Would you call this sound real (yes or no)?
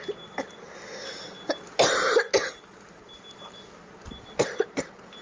yes